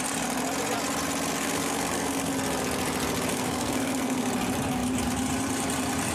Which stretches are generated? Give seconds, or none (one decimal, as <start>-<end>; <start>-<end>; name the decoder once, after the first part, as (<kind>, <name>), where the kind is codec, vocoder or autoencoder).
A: 1.4-2.3 (codec, SNAC); 3.3-4.3